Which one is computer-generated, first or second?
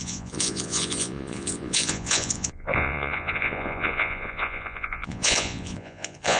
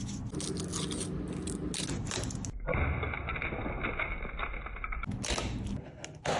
first